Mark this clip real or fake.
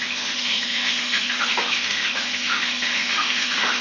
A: fake